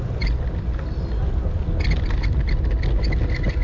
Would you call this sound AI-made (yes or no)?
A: no